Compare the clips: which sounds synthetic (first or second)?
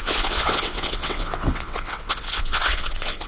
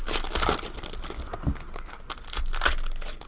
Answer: first